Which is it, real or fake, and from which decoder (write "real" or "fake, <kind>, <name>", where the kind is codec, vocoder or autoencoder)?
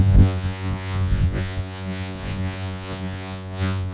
fake, vocoder, Vocos